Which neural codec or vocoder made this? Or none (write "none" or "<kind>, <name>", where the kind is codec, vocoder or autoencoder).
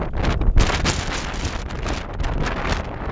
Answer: none